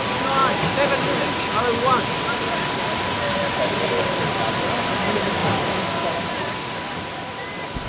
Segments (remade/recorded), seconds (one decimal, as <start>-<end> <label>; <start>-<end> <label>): 0.0-7.9 recorded